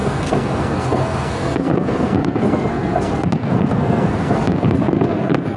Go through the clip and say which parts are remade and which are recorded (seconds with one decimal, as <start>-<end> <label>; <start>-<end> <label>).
0.0-5.6 remade